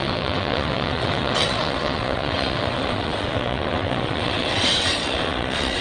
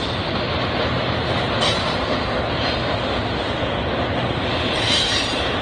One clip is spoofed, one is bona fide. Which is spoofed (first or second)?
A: first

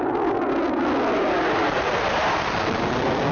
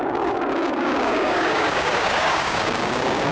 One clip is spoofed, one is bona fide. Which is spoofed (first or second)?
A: second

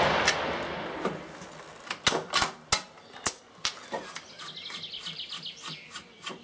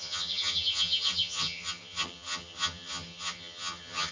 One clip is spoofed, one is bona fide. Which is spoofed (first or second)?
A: second